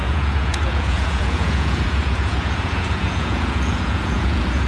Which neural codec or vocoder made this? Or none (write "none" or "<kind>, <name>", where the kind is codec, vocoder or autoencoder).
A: vocoder, Vocos